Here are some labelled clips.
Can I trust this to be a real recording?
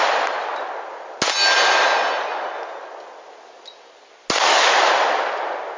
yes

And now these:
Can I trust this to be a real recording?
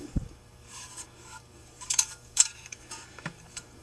no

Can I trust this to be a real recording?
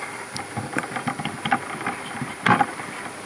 yes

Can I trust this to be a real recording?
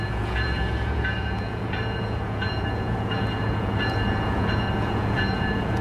no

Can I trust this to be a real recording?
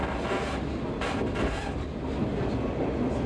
yes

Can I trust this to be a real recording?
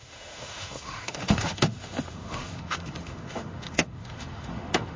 no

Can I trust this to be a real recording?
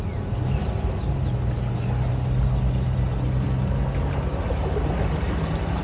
yes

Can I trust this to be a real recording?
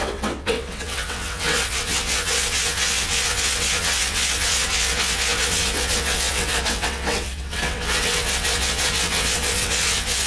no